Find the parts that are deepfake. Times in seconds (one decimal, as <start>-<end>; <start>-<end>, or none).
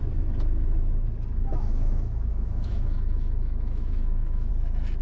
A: 1.5-4.5